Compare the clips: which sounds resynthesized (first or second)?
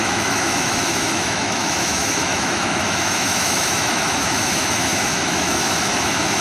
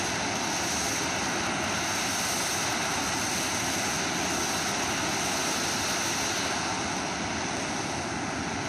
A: first